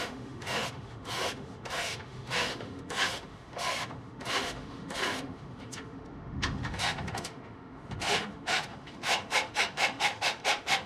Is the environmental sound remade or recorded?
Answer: remade